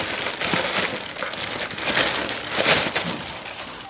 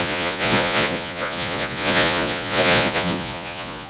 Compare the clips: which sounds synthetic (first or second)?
second